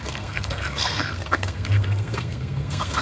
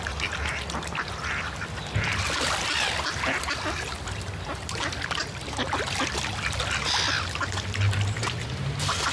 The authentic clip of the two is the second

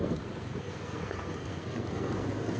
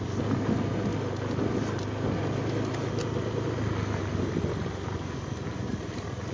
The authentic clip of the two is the second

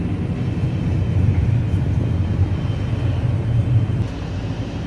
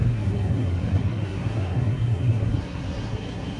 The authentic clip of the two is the first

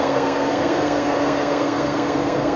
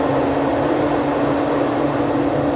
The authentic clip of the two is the second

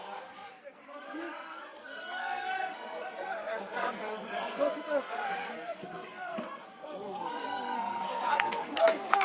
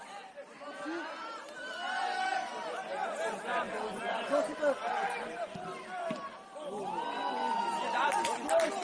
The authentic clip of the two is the second